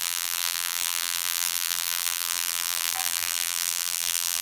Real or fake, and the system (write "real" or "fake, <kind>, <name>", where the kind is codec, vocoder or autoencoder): fake, vocoder, BigVGAN v2